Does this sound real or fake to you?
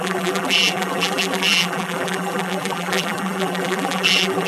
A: fake